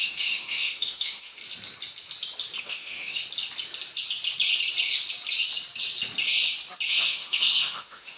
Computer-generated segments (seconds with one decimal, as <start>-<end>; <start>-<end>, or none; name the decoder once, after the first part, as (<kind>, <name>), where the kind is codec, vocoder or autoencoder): 0.0-1.4 (autoencoder, DAC-VAE); 2.6-3.2; 6.9-8.2